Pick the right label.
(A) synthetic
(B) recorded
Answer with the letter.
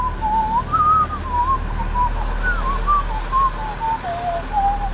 B